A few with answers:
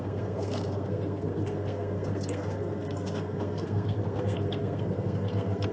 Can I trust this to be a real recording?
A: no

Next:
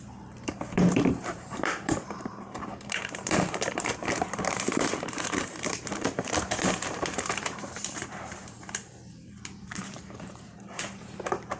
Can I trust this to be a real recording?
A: no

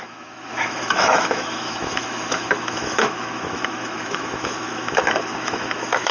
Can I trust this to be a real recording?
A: no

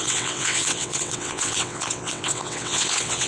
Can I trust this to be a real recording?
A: no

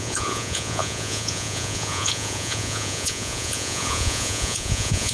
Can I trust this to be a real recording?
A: no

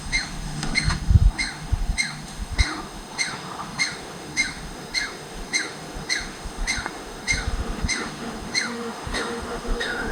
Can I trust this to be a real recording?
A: no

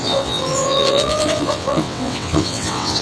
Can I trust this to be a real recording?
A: no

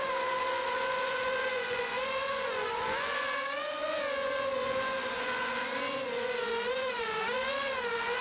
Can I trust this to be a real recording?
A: no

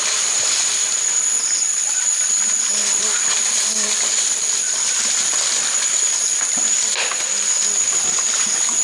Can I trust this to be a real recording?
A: yes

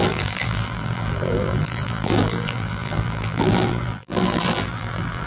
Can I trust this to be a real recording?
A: no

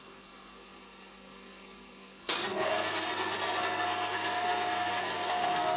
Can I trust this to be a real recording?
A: no